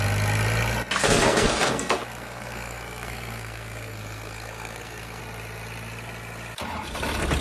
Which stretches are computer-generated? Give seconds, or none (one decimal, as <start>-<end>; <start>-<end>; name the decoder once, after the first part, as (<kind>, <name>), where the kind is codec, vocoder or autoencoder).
1.0-5.2 (codec, SNAC)